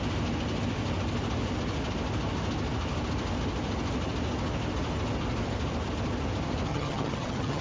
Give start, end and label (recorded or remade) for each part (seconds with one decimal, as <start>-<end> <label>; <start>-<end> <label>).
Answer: 0.0-6.7 recorded; 6.7-7.6 remade